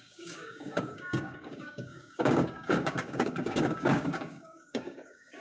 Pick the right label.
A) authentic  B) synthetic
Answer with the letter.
B